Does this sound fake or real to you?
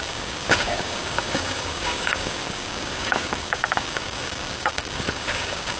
fake